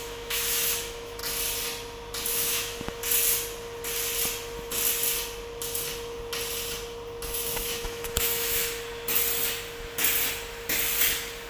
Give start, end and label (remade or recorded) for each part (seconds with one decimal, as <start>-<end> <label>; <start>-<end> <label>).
0.0-1.2 remade; 1.2-2.3 recorded; 2.3-3.0 remade; 3.0-7.5 recorded; 7.5-8.7 remade; 8.7-11.5 recorded